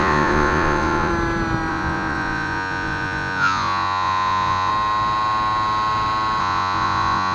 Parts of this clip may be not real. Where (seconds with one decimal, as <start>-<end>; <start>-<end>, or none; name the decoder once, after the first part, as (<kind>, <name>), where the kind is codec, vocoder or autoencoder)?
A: 0.0-1.1 (vocoder, Vocos); 1.7-4.7; 6.4-7.3